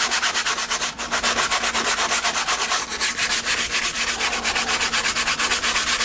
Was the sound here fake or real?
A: real